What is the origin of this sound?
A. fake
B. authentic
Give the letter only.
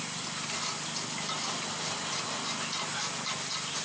B